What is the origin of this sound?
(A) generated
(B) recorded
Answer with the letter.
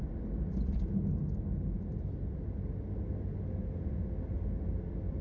B